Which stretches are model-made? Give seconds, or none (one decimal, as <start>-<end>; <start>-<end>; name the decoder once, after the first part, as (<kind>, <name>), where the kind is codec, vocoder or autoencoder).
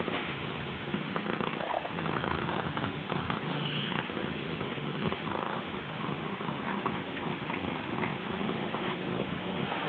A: 0.0-9.9 (autoencoder, DAC-VAE)